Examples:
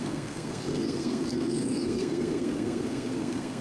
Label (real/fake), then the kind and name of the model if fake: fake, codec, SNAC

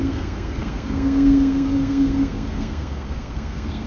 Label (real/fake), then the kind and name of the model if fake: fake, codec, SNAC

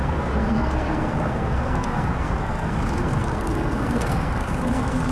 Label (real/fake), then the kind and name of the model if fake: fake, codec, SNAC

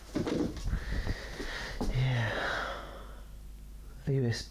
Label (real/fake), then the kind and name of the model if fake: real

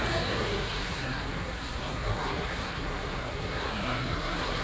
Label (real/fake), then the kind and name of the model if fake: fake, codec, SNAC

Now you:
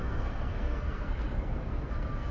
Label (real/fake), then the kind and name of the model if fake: fake, codec, SNAC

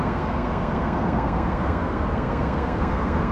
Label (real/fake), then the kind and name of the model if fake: fake, codec, SNAC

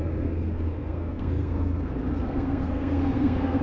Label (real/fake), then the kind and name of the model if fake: fake, codec, SNAC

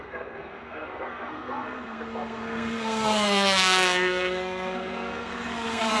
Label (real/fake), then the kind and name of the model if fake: fake, codec, SNAC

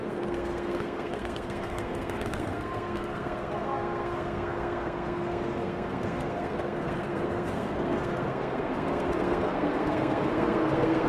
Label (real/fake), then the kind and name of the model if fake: fake, codec, SNAC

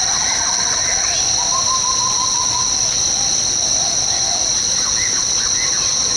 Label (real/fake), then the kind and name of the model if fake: real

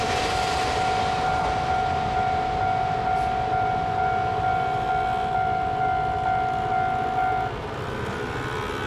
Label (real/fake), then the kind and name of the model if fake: real